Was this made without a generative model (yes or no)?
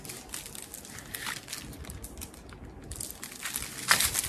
yes